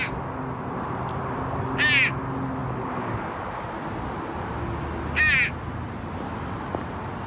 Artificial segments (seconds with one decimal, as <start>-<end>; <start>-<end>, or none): none